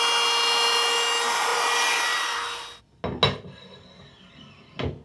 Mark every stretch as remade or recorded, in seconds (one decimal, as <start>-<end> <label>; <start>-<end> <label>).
0.0-5.0 recorded